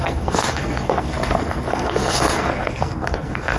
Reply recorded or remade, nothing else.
remade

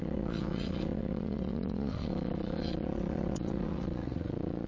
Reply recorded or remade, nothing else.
remade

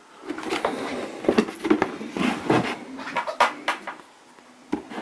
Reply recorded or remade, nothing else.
recorded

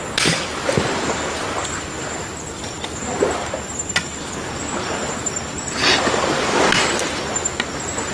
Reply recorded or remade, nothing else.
recorded